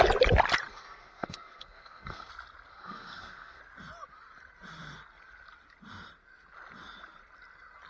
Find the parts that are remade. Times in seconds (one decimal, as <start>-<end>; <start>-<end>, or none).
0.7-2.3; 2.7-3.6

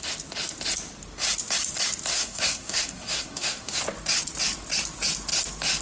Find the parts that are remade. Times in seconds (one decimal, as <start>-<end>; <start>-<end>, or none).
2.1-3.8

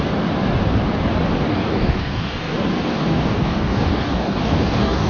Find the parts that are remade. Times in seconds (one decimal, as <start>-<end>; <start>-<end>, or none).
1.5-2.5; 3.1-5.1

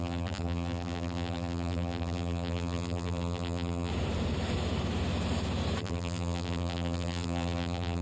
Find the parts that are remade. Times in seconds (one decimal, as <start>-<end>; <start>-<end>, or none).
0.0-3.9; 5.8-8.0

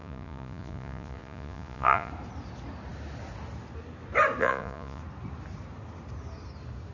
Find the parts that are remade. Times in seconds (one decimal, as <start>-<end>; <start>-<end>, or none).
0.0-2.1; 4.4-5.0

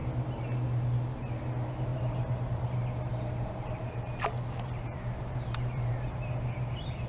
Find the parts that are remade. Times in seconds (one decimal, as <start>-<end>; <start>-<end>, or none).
1.9-2.5; 3.1-5.9

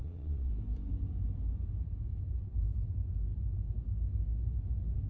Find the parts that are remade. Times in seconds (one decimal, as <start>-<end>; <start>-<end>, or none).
0.0-0.5